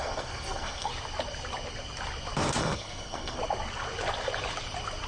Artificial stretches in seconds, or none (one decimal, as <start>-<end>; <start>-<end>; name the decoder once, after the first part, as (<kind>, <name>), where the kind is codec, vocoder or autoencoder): 0.0-0.9 (codec, SNAC); 2.6-3.4